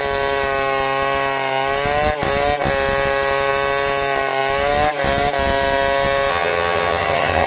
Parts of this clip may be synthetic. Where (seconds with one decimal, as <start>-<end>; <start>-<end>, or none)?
6.3-7.5